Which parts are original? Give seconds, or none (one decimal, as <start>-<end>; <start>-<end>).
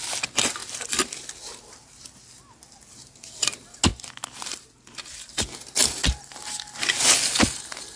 0.0-8.0